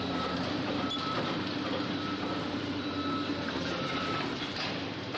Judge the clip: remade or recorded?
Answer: remade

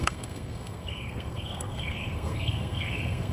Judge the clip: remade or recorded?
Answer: remade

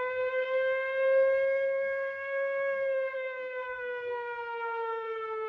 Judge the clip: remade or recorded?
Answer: remade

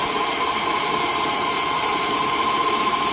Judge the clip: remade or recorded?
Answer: remade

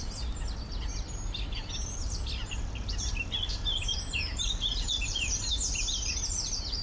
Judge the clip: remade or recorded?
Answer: remade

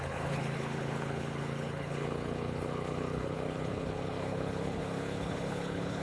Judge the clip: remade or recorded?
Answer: remade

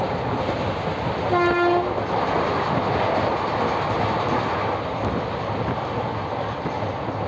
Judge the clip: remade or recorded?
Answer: recorded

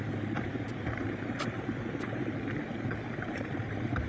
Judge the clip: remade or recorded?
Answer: remade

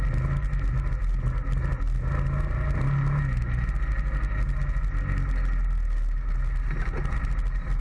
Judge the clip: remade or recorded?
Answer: recorded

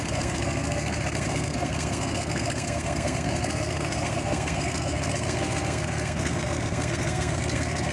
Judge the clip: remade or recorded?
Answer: remade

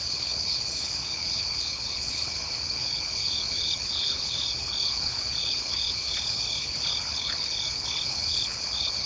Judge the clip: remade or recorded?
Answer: remade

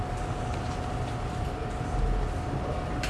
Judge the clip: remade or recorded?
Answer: recorded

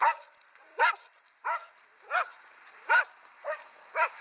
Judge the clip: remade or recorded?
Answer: recorded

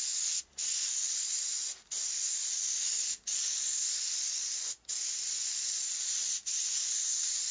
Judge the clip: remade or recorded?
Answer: recorded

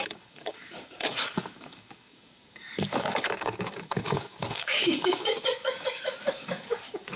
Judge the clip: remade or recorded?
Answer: remade